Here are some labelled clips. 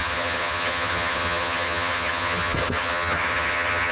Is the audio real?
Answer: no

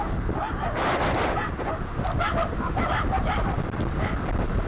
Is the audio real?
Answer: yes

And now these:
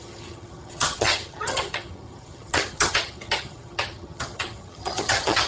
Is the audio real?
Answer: no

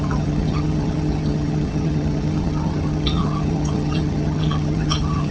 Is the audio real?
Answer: no